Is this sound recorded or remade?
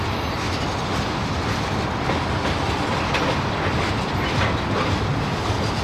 recorded